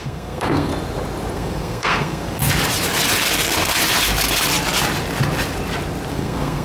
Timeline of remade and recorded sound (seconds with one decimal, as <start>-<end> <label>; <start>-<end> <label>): 0.0-0.7 remade; 0.7-1.3 recorded; 1.3-2.4 remade; 2.4-6.1 recorded; 6.1-6.6 remade